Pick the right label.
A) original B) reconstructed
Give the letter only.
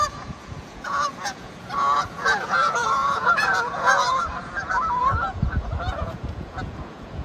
B